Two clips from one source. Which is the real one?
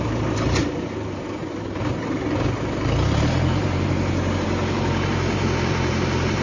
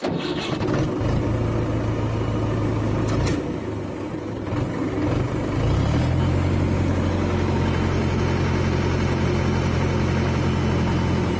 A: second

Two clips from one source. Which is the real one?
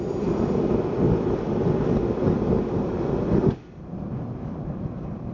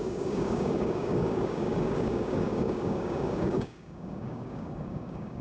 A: first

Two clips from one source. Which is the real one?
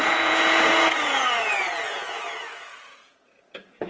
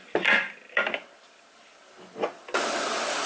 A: second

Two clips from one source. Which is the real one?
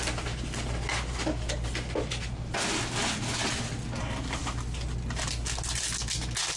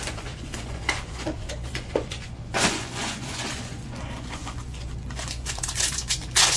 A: first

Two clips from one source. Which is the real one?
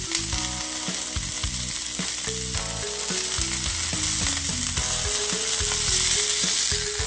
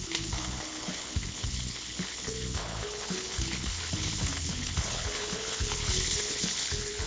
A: first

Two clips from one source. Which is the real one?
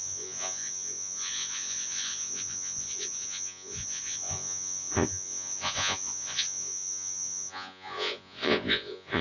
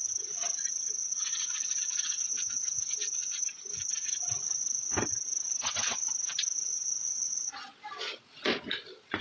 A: second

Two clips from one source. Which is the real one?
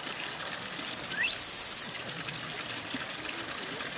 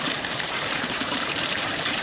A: first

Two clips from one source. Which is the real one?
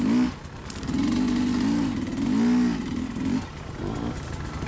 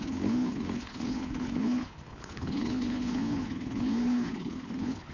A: first